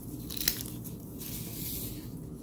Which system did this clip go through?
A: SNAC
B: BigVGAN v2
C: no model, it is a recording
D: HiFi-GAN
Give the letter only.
C